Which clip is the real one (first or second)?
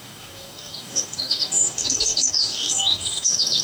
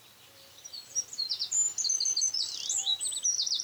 second